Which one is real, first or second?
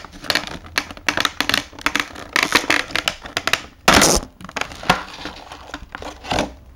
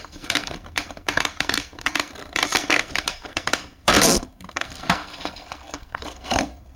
first